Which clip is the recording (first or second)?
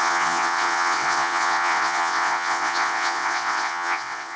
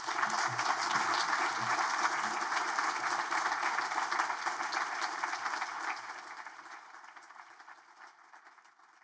second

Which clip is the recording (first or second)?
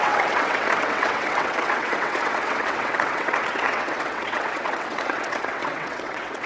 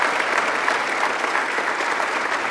second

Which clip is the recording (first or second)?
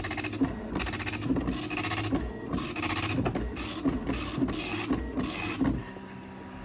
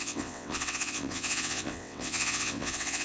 first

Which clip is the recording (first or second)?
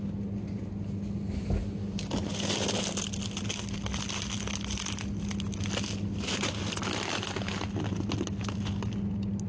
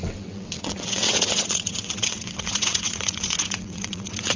first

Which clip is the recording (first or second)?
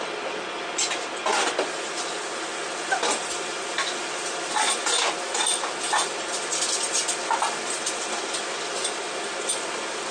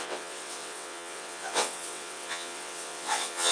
first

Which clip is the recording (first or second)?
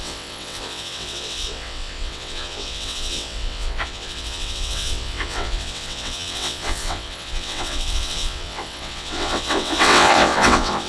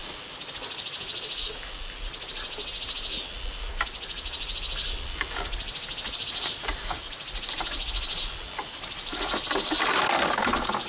second